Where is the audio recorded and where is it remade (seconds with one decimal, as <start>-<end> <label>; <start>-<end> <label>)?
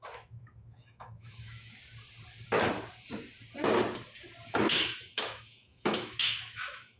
0.0-1.8 remade; 1.8-4.5 recorded; 4.5-7.0 remade